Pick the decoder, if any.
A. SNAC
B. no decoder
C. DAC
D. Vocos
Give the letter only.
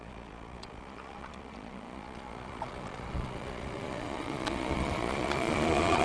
D